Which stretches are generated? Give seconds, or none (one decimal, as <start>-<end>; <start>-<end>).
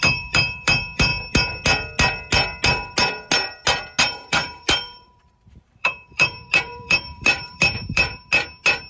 0.0-1.1; 4.0-8.2